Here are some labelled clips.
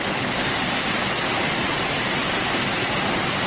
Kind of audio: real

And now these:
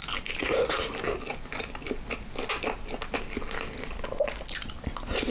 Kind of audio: real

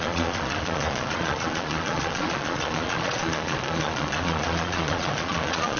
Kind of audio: fake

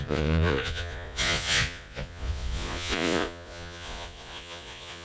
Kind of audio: fake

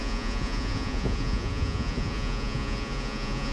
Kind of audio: fake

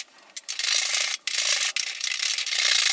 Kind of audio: real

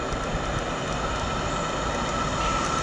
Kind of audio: real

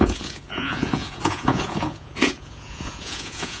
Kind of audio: fake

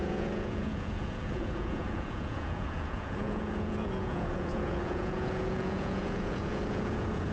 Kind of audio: fake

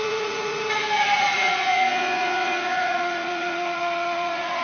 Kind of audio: fake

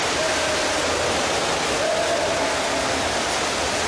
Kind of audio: real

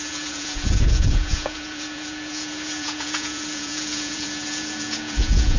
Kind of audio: fake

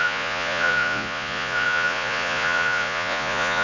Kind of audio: fake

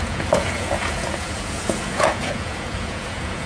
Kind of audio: fake